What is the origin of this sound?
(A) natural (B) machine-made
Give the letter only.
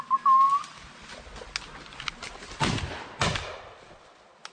A